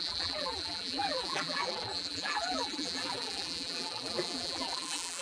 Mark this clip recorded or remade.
remade